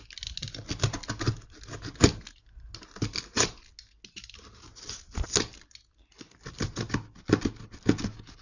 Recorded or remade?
recorded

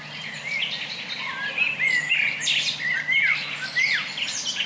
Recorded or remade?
recorded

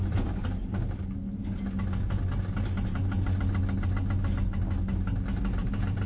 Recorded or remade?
recorded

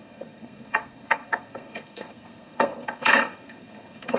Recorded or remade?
remade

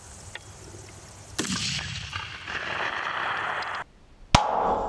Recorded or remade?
recorded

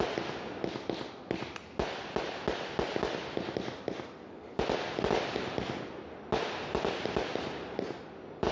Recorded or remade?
recorded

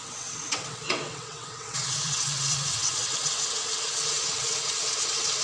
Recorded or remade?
remade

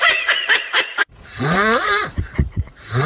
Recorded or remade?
remade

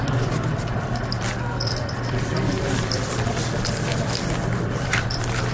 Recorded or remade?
remade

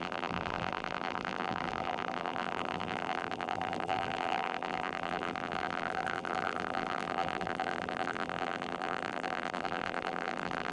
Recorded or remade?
remade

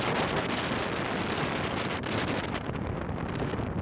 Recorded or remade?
recorded